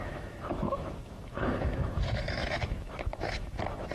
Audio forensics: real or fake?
fake